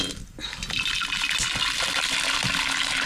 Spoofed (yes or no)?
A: no